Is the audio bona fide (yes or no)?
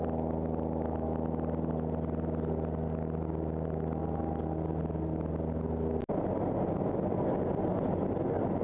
yes